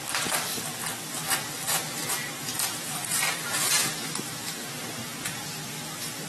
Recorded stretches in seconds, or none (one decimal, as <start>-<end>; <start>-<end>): 0.0-6.3